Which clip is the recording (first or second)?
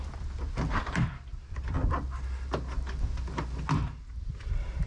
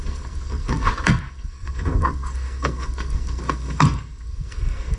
first